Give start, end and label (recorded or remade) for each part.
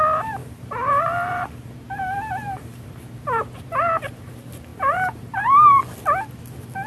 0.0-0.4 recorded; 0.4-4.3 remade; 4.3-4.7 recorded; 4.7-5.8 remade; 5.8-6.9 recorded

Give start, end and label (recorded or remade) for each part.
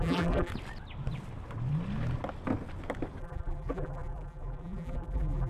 0.0-0.5 remade; 0.5-3.2 recorded; 3.2-5.5 remade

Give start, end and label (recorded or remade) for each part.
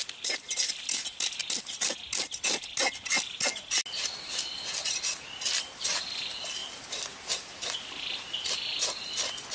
0.0-9.5 recorded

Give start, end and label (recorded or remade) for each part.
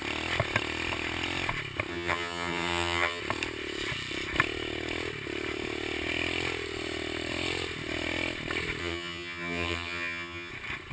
0.0-1.9 recorded; 1.9-3.2 remade; 3.2-8.8 recorded; 8.8-10.5 remade; 10.5-10.9 recorded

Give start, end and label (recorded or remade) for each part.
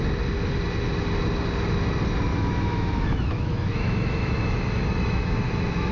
0.0-2.3 recorded; 2.3-5.9 remade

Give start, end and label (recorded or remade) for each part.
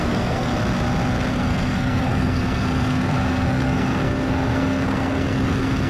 0.0-0.5 remade; 0.5-1.3 recorded; 1.3-5.9 remade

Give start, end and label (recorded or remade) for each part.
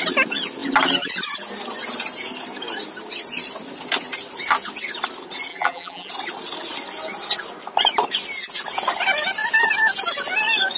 0.0-5.5 recorded; 5.5-6.1 remade; 6.1-10.8 recorded